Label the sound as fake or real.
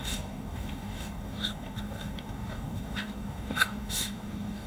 fake